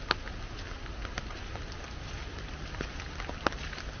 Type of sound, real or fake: real